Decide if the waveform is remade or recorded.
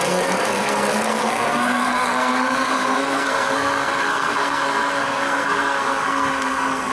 remade